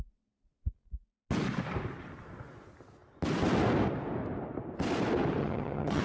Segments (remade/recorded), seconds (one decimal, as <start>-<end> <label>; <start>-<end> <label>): 0.0-5.4 recorded; 5.4-6.0 remade